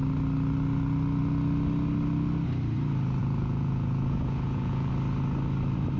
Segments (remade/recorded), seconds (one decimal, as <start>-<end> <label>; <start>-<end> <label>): 0.0-3.2 recorded; 3.2-4.9 remade; 4.9-6.0 recorded